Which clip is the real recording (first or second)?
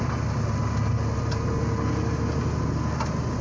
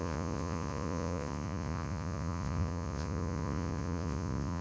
first